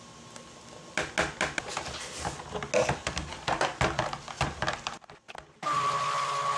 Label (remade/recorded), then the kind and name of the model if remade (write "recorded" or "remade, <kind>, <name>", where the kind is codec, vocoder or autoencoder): recorded